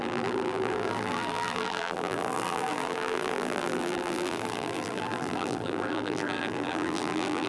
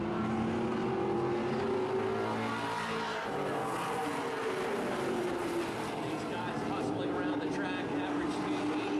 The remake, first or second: first